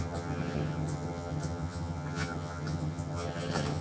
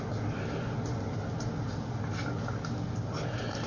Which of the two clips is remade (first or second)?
first